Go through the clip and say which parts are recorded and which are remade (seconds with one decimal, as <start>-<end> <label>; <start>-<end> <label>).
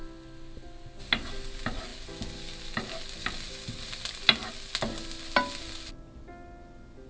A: 0.0-7.1 recorded